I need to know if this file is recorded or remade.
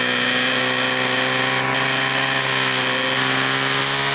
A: recorded